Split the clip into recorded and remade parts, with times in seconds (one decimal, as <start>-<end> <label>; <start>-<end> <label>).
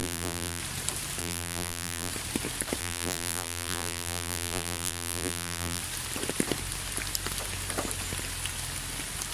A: 0.0-0.6 remade; 0.6-1.2 recorded; 1.2-2.1 remade; 2.1-2.8 recorded; 2.8-5.8 remade; 5.8-9.3 recorded